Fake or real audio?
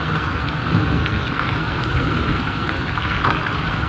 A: fake